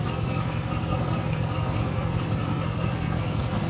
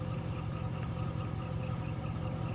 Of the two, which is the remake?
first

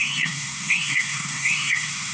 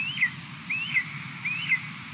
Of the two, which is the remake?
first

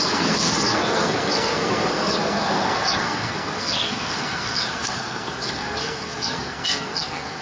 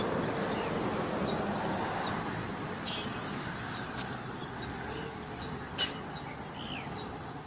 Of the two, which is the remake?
first